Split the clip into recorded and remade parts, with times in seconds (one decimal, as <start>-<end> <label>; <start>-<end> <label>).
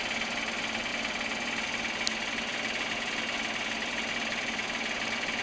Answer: 0.0-5.4 recorded